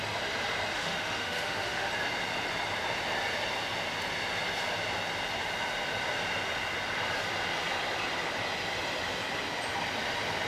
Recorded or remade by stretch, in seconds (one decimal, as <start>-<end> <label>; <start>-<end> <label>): 0.0-0.7 recorded; 0.7-1.9 remade; 1.9-10.5 recorded